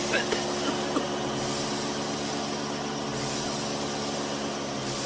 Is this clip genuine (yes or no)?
yes